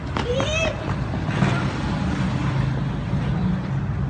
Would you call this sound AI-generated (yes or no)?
no